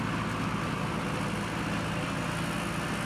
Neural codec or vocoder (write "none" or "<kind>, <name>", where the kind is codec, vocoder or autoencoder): none